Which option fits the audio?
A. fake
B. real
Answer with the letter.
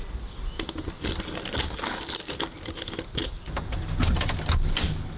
B